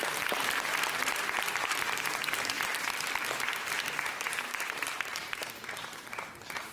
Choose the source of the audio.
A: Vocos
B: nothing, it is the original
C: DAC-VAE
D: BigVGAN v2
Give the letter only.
D